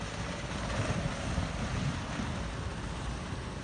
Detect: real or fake real